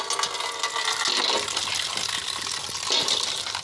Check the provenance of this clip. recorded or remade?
recorded